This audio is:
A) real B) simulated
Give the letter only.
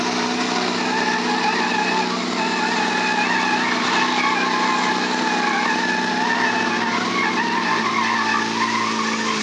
A